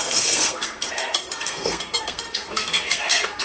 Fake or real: fake